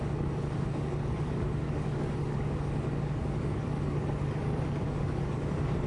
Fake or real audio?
fake